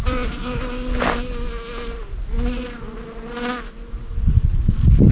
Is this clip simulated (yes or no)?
no